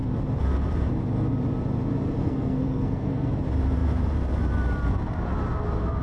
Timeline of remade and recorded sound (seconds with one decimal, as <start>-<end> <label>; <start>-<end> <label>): 0.0-2.2 recorded; 2.2-3.3 remade; 3.3-6.0 recorded